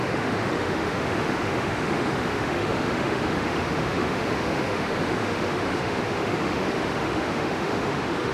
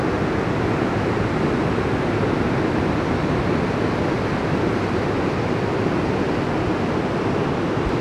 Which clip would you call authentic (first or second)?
second